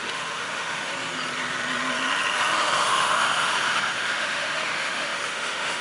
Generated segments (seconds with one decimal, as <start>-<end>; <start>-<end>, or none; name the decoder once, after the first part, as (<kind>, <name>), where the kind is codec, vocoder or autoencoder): 0.0-0.9 (autoencoder, DAC-VAE); 2.6-5.8